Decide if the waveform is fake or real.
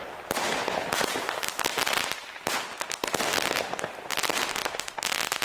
real